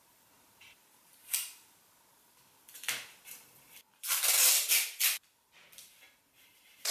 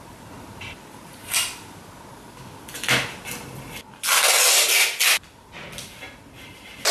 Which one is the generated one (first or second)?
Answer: first